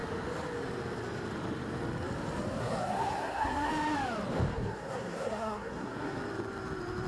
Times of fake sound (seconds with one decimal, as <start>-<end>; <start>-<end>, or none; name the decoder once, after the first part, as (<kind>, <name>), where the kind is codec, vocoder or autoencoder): 2.6-3.7 (codec, SNAC); 4.5-6.2